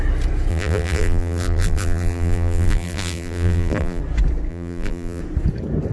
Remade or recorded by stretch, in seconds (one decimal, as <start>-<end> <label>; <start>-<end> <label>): 0.0-0.5 recorded; 0.5-4.0 remade; 4.0-4.5 recorded; 4.5-5.2 remade; 5.2-5.9 recorded